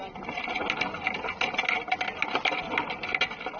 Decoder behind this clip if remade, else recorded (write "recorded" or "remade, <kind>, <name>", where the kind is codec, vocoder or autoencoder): recorded